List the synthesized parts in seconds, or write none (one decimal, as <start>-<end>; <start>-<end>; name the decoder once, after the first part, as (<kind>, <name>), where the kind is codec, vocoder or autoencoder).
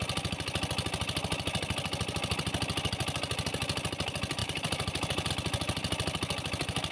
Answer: 4.4-5.3 (vocoder, BigVGAN v2)